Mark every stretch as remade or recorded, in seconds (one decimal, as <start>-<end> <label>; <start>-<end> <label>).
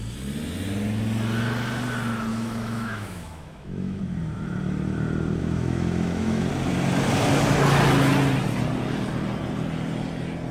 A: 0.0-2.3 recorded; 2.3-4.0 remade; 4.0-5.4 recorded; 5.4-6.5 remade; 6.5-10.5 recorded